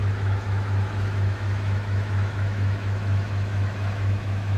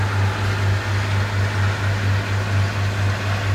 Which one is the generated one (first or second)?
first